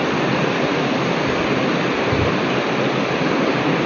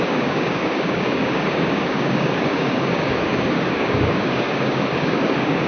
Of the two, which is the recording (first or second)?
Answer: first